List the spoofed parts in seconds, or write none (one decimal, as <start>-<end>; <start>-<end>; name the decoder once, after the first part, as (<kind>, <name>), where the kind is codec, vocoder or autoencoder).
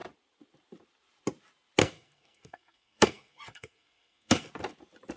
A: 1.8-4.5 (codec, SNAC)